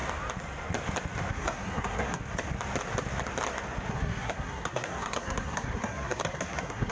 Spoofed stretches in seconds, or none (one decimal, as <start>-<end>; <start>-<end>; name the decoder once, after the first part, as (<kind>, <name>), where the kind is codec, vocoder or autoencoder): 1.3-2.2 (codec, SNAC); 3.9-6.9